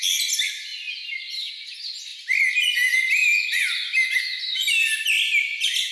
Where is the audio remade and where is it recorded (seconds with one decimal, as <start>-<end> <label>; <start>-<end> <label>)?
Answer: 0.0-5.9 recorded